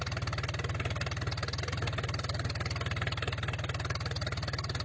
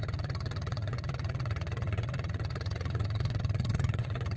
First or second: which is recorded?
first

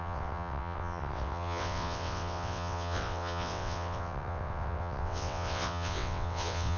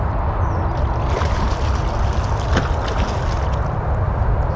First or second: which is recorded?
second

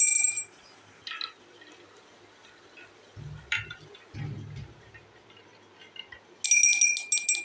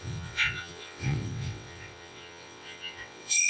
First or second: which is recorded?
first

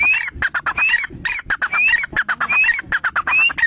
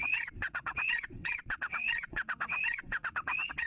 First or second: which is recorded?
first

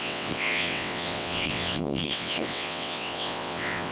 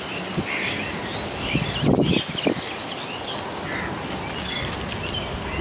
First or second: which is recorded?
second